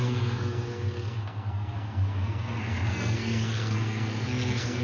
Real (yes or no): no